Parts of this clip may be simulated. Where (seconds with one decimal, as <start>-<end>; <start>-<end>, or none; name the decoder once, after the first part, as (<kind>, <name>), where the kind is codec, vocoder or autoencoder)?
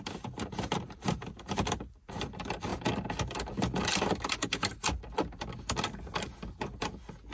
none